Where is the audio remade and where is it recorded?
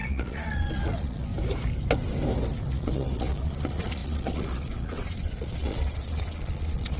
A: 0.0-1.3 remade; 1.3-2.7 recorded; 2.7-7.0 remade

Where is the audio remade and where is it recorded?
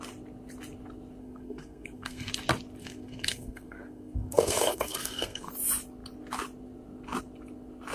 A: 0.0-1.2 recorded; 1.2-2.3 remade; 2.3-2.8 recorded; 2.8-5.5 remade; 5.5-7.9 recorded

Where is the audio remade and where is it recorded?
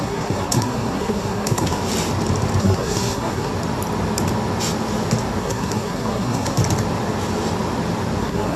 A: 0.0-1.8 remade; 1.8-2.6 recorded; 2.6-3.5 remade; 3.5-5.4 recorded; 5.4-6.6 remade; 6.6-8.2 recorded; 8.2-8.6 remade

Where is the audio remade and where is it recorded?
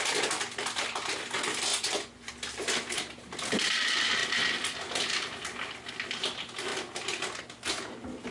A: 0.0-1.7 recorded; 1.7-2.3 remade; 2.3-8.3 recorded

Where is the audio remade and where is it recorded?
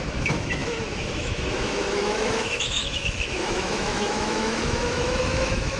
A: 0.0-5.8 remade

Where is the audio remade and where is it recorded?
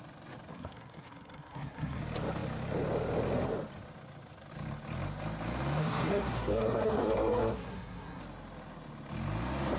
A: 0.0-0.5 recorded; 0.5-2.0 remade; 2.0-5.8 recorded; 5.8-8.2 remade; 8.2-9.8 recorded